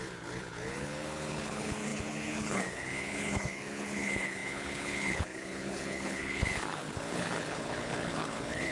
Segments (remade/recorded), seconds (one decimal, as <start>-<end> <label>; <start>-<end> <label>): 0.0-8.7 remade